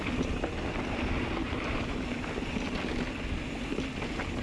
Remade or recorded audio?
recorded